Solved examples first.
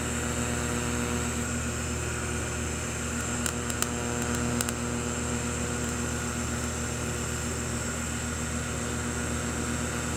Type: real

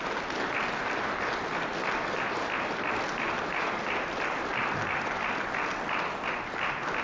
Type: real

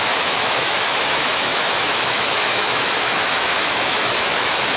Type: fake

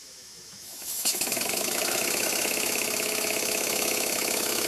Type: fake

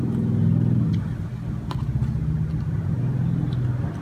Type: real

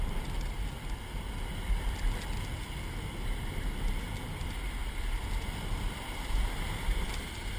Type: real